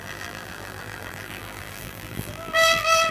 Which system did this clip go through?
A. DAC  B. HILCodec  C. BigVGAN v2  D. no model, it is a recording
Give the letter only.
C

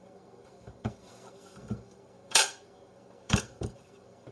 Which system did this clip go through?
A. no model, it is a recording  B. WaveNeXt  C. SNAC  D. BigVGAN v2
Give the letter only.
C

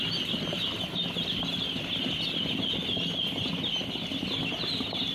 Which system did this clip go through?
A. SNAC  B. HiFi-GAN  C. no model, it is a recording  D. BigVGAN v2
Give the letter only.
C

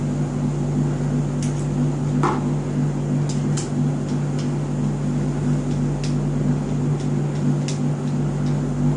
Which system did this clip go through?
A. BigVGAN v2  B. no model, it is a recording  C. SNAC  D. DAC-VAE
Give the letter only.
B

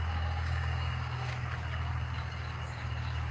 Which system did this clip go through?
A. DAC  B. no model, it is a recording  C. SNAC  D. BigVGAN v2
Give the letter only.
A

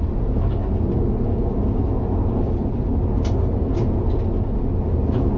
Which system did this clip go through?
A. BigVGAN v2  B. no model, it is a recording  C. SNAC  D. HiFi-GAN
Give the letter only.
B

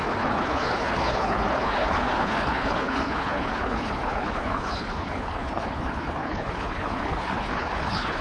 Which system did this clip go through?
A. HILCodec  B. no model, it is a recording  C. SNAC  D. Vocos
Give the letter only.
A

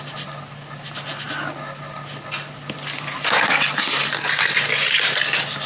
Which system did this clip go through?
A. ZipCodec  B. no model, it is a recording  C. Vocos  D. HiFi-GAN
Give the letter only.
B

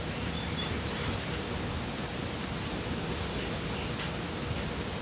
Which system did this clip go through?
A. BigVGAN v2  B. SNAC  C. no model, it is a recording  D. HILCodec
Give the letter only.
C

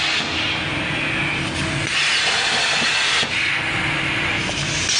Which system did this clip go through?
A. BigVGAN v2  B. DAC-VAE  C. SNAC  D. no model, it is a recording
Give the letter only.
D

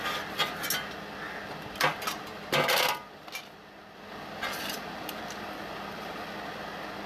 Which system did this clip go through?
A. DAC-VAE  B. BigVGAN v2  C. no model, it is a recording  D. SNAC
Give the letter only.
C